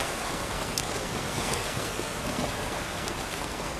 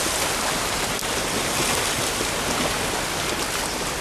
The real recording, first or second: second